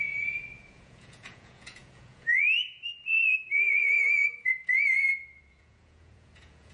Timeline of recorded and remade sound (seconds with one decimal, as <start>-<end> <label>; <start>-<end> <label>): 0.0-6.7 remade